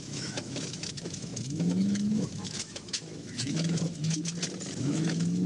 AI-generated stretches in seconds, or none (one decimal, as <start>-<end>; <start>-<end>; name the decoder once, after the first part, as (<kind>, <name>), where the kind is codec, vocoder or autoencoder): 0.0-4.3 (autoencoder, DAC-VAE); 4.8-5.5